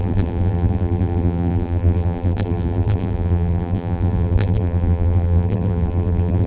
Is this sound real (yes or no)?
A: no